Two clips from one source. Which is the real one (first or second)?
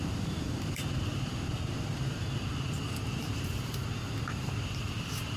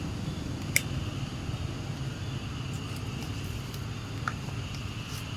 second